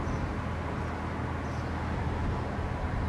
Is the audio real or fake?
real